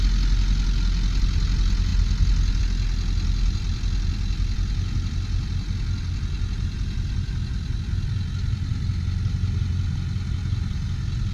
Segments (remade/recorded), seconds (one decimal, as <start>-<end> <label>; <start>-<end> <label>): 0.0-11.3 recorded